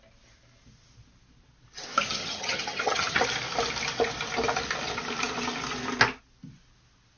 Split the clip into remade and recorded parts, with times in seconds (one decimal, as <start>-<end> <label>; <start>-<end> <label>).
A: 0.0-2.2 recorded; 2.2-3.2 remade; 3.2-7.2 recorded